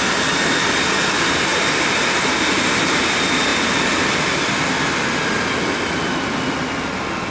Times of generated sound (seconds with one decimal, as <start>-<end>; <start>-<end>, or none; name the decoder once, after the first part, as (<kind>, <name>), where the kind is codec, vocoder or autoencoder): none